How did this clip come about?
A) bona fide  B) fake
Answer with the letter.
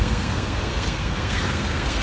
B